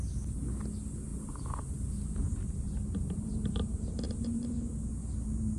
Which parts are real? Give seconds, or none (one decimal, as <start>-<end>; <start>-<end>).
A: 0.0-1.1; 4.5-5.6